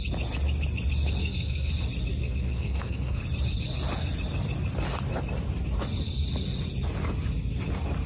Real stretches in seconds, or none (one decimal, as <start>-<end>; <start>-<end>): 0.0-1.2; 1.7-2.2; 3.2-8.1